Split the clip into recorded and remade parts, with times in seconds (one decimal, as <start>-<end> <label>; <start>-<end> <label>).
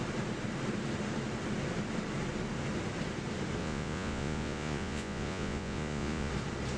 0.0-3.6 recorded; 3.6-6.3 remade; 6.3-6.8 recorded